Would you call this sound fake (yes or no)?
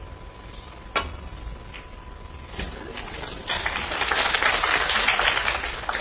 no